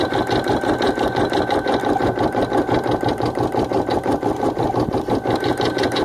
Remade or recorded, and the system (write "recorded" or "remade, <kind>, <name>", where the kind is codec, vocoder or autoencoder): recorded